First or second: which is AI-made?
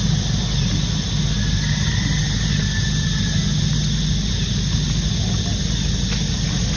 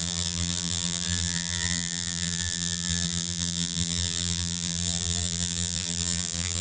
second